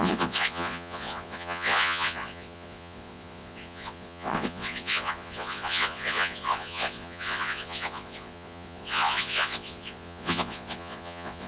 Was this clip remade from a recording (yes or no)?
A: yes